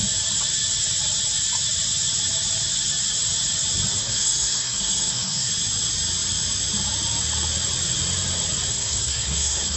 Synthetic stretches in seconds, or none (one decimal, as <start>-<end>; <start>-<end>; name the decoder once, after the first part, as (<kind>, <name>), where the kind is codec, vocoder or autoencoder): 4.0-5.5 (codec, SNAC); 8.7-9.8